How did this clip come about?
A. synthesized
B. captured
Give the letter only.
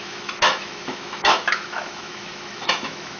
A